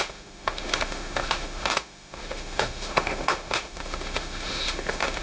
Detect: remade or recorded remade